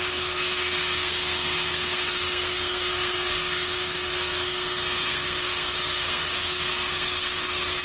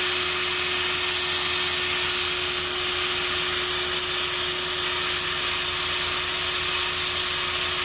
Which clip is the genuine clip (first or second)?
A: second